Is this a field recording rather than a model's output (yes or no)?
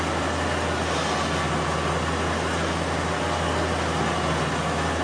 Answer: yes